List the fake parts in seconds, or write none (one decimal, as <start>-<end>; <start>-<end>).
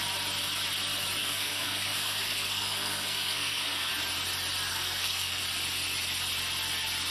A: 1.2-3.9; 4.7-5.4